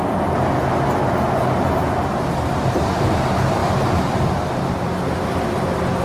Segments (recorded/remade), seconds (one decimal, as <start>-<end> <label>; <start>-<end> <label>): 0.0-3.6 recorded; 3.6-6.0 remade